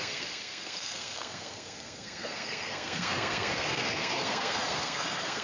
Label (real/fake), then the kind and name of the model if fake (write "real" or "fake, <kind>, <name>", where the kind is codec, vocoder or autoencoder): fake, codec, SNAC